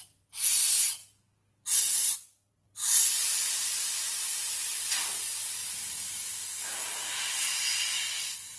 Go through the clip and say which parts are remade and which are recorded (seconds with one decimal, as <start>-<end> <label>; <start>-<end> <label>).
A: 0.0-8.6 recorded